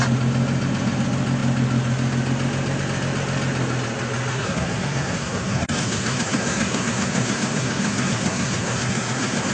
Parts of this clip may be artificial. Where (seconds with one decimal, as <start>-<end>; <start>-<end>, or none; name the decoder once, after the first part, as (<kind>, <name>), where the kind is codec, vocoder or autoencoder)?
4.3-9.5 (codec, SNAC)